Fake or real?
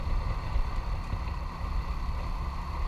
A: real